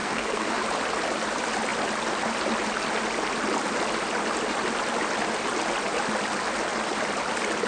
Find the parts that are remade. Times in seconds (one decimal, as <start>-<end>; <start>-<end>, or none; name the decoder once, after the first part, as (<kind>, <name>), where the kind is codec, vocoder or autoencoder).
0.0-0.6 (codec, SNAC)